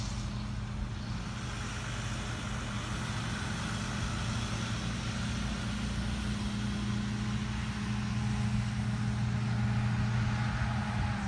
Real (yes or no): yes